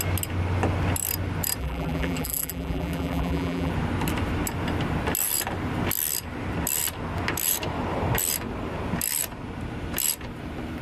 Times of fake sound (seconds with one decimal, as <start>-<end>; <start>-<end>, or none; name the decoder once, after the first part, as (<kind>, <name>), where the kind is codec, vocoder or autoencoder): 1.6-3.7 (vocoder, BigVGAN v2)